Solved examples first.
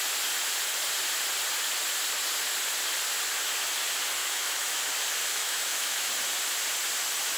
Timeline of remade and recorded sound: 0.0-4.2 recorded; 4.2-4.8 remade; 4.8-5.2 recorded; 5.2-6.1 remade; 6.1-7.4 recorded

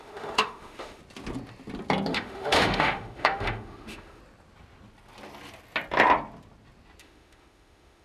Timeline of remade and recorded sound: 0.0-1.0 remade; 1.0-2.1 recorded; 2.1-4.2 remade; 4.2-7.0 recorded; 7.0-8.0 remade

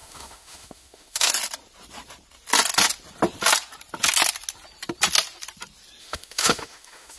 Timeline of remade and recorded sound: 0.0-1.3 remade; 1.3-6.0 recorded; 6.0-7.2 remade